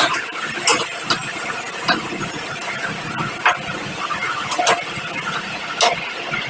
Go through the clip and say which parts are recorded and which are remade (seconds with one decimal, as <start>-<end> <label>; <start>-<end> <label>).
0.0-6.5 recorded